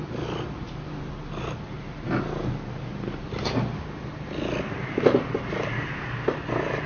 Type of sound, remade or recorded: recorded